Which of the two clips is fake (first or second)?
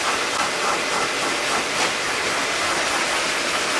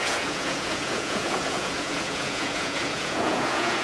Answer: second